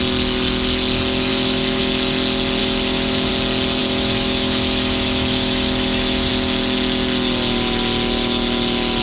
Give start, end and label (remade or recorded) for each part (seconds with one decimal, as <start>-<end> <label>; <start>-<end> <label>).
0.0-1.3 recorded; 1.3-1.8 remade; 1.8-2.6 recorded; 2.6-3.3 remade; 3.3-3.8 recorded; 3.8-6.3 remade; 6.3-9.0 recorded